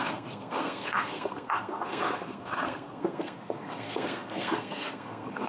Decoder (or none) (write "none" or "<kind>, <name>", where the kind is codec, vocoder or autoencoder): codec, SNAC